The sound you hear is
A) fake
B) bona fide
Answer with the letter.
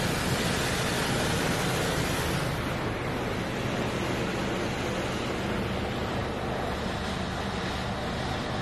B